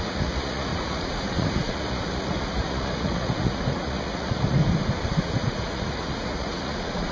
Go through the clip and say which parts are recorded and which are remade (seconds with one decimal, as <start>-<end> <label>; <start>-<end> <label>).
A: 0.0-4.6 remade; 4.6-5.2 recorded; 5.2-7.1 remade